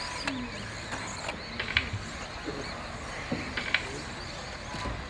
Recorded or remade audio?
recorded